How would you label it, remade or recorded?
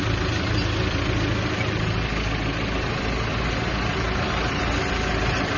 recorded